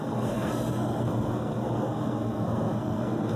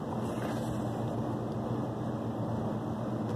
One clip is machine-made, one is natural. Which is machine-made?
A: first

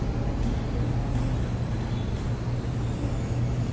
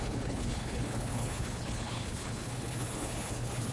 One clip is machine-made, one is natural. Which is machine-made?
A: second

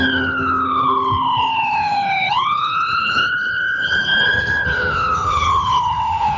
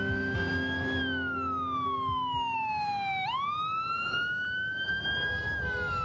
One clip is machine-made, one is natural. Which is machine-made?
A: first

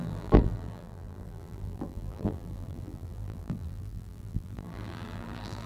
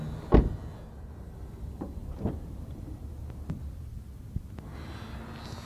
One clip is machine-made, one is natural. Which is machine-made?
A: first